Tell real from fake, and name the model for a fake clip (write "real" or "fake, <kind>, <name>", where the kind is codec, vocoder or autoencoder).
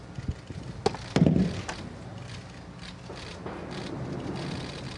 real